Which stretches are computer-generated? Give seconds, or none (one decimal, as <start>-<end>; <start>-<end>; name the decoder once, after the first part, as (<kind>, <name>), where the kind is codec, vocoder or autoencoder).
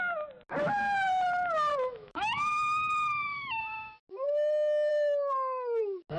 1.7-3.6 (autoencoder, DAC-VAE); 4.9-5.8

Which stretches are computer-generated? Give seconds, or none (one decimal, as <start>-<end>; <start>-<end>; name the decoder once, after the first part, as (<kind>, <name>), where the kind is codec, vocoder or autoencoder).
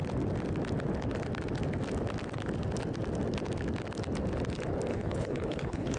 4.9-6.0 (codec, HILCodec)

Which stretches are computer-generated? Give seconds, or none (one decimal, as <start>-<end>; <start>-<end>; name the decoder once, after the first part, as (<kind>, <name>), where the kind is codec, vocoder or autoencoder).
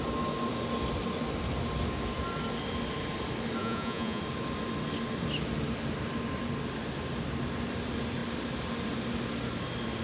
3.6-4.2 (vocoder, Vocos)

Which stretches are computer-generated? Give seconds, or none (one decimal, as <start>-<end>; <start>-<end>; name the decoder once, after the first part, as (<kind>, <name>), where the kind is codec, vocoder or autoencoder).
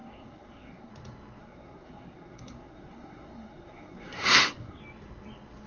0.0-0.9 (codec, SNAC); 1.4-4.8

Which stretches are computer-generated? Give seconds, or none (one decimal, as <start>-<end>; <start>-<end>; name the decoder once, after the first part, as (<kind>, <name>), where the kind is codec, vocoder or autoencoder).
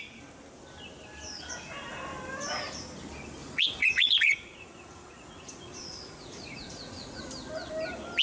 3.4-7.2 (vocoder, Vocos)